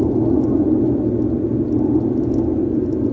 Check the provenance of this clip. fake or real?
real